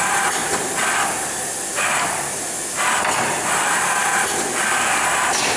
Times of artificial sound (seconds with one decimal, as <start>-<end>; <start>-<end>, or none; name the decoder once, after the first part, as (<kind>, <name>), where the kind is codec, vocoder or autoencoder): none